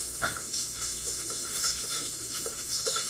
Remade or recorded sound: remade